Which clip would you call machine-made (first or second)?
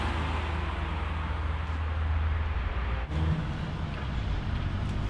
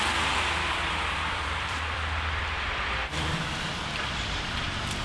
second